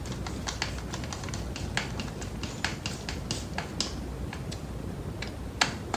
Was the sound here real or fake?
real